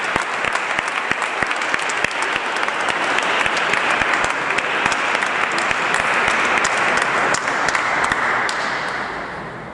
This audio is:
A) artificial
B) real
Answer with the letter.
B